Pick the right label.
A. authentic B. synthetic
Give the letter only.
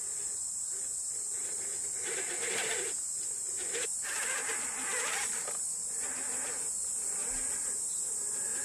A